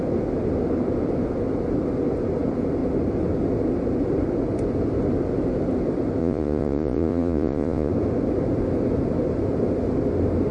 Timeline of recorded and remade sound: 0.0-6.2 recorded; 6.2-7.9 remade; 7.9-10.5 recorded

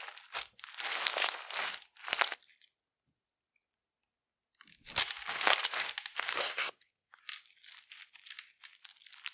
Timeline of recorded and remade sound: 0.0-6.3 recorded; 6.3-7.2 remade; 7.2-9.3 recorded

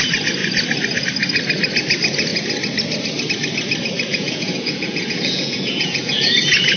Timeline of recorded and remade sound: 0.0-4.1 recorded; 4.1-6.3 remade; 6.3-6.8 recorded

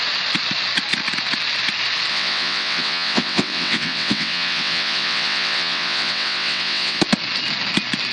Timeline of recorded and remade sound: 0.0-2.1 recorded; 2.1-7.0 remade; 7.0-8.1 recorded

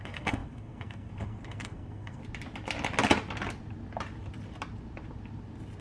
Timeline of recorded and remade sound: 0.0-2.2 remade; 2.2-5.8 recorded

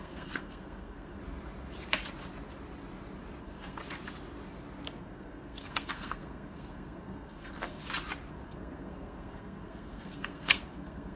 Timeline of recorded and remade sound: 0.0-1.2 remade; 1.2-3.4 recorded; 3.4-3.8 remade; 3.8-5.0 recorded; 5.0-7.8 remade; 7.8-8.3 recorded; 8.3-11.2 remade